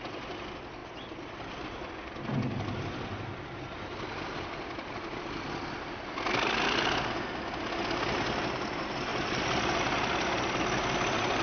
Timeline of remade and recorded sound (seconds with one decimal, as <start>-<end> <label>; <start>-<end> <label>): 0.0-11.4 recorded